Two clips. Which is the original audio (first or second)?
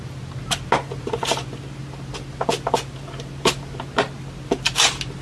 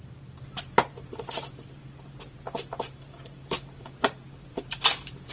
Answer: first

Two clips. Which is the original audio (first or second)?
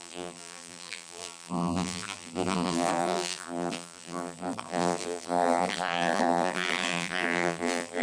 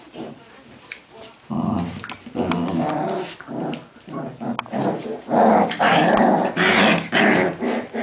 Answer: second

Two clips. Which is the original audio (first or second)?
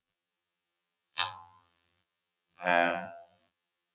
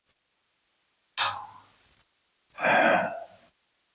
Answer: second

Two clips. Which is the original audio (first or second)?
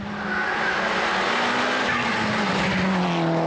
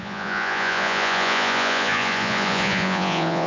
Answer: first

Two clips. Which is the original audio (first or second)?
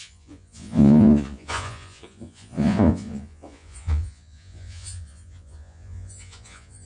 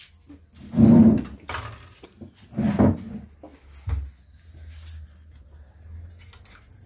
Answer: second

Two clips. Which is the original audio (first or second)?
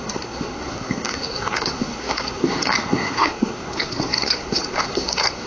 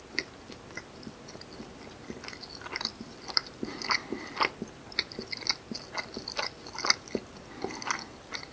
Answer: second